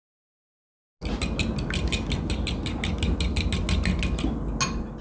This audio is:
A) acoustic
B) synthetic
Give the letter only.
A